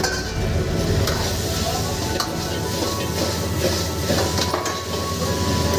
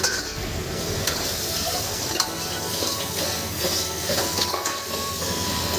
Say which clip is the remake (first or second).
second